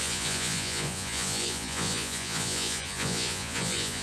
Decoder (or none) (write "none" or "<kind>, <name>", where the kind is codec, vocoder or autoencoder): vocoder, Vocos